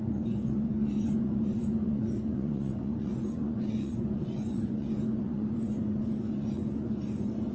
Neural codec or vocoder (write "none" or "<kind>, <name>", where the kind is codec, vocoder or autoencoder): vocoder, Vocos